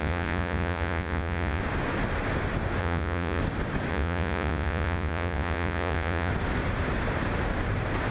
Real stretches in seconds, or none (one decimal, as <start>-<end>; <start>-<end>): 1.6-2.8; 3.4-3.9; 6.3-8.1